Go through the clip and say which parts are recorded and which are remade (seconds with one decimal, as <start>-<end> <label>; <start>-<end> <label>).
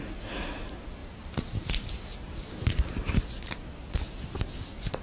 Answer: 0.0-5.0 recorded